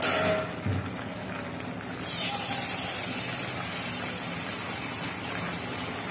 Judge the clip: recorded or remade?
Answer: recorded